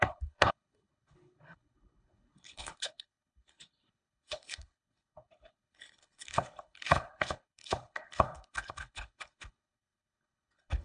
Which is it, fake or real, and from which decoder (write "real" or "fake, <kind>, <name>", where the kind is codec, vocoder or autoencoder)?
fake, codec, HILCodec